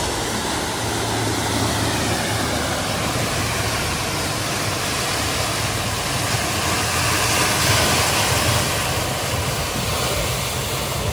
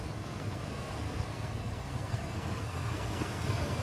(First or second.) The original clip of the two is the first